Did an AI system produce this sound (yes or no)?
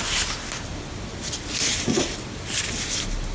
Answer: no